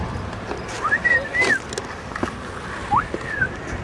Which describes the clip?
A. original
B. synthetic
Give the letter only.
A